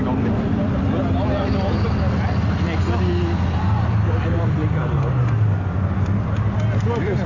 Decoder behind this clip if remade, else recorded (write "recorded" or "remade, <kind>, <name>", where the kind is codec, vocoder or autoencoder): recorded